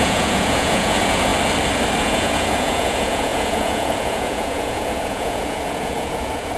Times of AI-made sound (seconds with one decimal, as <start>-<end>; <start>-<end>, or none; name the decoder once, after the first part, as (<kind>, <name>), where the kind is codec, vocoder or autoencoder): 0.0-1.3 (vocoder, Vocos); 2.0-6.6